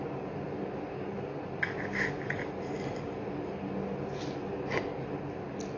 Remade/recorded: recorded